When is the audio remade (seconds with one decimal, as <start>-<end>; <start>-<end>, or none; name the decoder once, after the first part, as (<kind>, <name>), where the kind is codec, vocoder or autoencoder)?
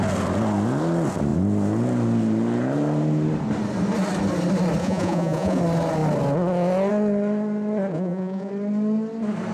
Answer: 4.8-5.6 (vocoder, Vocos); 7.9-8.5